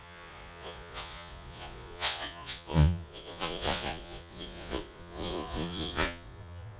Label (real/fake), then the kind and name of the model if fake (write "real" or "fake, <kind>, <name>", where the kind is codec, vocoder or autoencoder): fake, vocoder, Vocos